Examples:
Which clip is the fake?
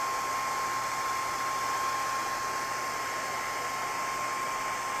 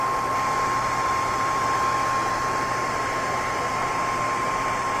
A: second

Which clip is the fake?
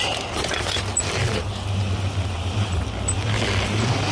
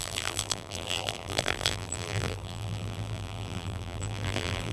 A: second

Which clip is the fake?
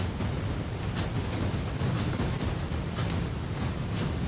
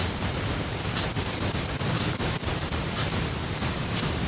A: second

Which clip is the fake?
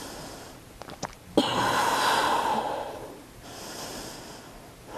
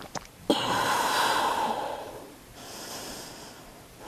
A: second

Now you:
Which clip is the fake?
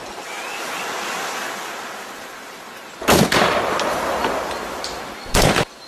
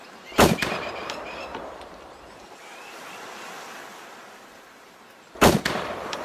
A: second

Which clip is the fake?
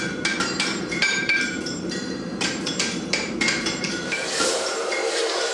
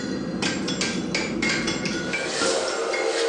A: first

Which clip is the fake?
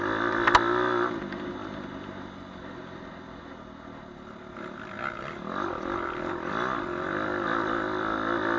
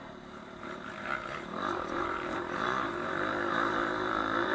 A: second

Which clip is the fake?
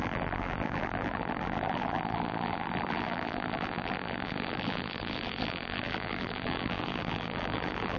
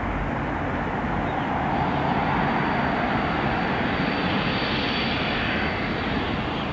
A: first